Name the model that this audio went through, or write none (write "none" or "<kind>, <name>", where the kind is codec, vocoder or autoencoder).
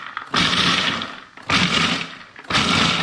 none